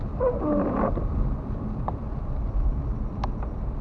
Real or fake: fake